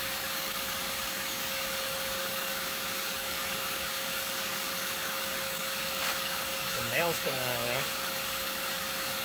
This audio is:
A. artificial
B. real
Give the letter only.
A